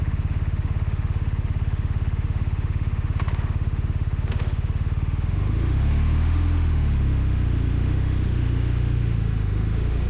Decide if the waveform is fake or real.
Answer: fake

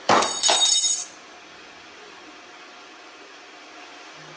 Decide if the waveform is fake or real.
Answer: real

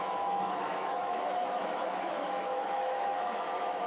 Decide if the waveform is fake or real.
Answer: fake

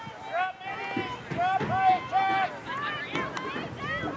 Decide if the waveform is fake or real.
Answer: real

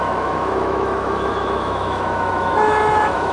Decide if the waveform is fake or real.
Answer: fake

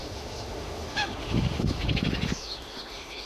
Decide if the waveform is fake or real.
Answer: fake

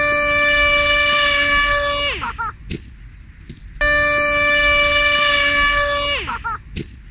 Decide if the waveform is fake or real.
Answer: real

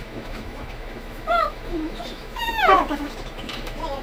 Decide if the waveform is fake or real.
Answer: fake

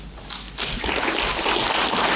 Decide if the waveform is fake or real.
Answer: real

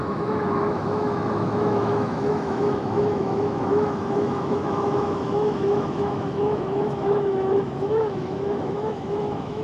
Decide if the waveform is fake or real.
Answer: fake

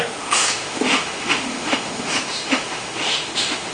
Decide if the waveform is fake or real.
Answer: fake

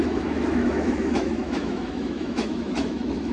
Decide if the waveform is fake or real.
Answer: fake